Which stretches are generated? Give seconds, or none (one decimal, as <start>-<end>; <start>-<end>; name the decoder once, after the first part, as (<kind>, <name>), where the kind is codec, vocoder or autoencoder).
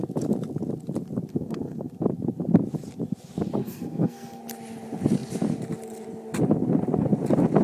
1.3-1.9 (codec, SNAC); 3.6-4.4